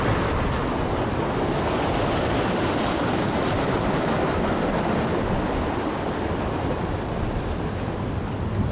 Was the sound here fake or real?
real